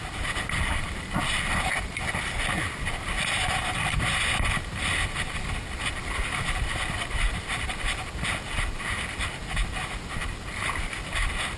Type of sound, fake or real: real